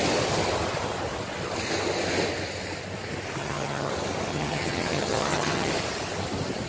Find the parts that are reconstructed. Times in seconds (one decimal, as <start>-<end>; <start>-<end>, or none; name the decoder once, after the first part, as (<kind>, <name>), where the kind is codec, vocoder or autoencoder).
3.4-3.9 (vocoder, HiFi-GAN); 4.3-5.7